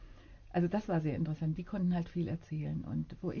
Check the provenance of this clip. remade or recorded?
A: recorded